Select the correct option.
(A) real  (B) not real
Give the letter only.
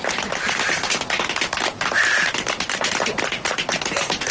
A